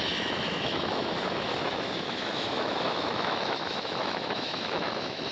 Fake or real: fake